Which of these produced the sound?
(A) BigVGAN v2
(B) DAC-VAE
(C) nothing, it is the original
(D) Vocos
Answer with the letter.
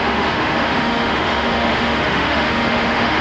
B